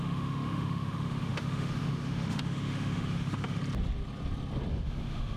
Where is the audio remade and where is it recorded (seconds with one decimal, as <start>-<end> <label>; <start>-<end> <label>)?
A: 0.0-3.6 remade; 3.6-4.7 recorded; 4.7-5.4 remade